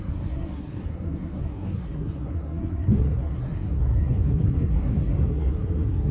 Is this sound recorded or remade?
remade